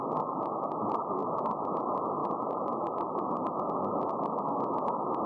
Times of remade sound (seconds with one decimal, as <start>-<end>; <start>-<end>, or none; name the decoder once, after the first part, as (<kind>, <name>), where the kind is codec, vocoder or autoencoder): 2.2-3.5 (vocoder, BigVGAN v2)